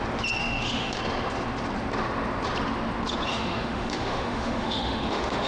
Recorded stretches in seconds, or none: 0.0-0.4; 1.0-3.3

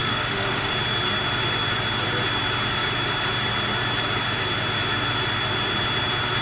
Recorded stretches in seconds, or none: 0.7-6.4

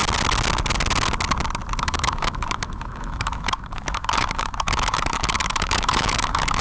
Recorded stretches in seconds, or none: 0.0-1.8

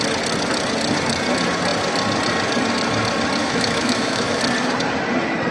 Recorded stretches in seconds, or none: 0.0-3.4; 4.4-5.5